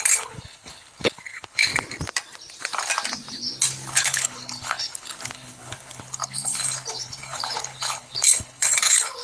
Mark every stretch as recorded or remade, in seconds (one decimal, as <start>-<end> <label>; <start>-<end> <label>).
0.0-1.7 remade; 1.7-3.9 recorded; 3.9-9.2 remade